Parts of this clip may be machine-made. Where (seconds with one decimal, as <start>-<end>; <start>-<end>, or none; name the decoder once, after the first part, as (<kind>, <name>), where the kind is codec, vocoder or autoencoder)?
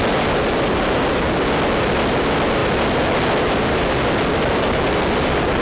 none